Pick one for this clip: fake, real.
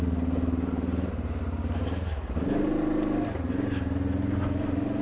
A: real